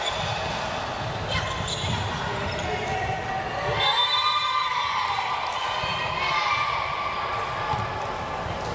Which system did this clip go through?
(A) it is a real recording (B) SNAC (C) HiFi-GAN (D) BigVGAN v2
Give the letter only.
A